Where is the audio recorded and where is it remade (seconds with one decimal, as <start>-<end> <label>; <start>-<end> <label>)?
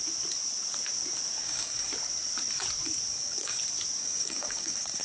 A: 0.0-1.4 recorded; 1.4-1.9 remade; 1.9-3.1 recorded; 3.1-3.6 remade; 3.6-4.0 recorded; 4.0-5.0 remade